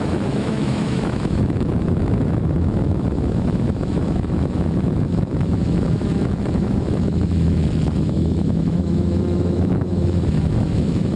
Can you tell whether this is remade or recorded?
remade